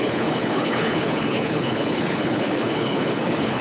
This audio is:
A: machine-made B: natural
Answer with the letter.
A